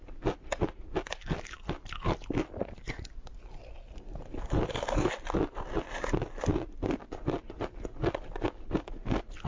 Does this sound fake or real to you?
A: real